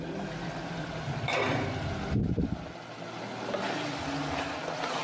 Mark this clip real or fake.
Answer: real